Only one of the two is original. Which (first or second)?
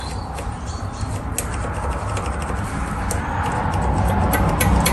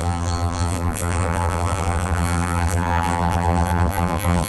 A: first